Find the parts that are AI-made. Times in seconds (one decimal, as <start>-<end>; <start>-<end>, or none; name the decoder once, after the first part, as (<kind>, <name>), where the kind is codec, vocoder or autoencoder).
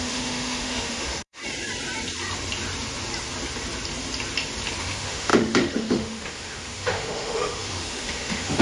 0.0-1.4 (autoencoder, DAC-VAE); 4.8-8.6